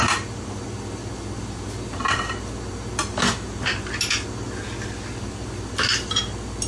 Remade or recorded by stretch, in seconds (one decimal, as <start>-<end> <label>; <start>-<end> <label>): 0.0-6.7 recorded